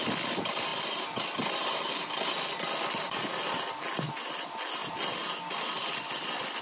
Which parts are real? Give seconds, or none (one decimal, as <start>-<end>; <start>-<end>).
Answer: 0.0-6.6